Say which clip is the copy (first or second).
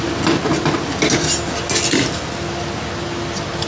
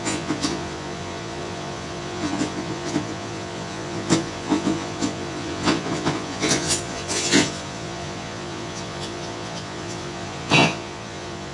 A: second